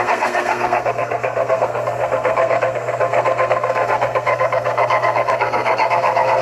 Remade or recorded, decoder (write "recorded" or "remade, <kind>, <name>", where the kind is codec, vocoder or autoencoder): remade, codec, SNAC